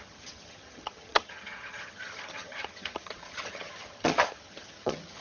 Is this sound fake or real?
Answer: fake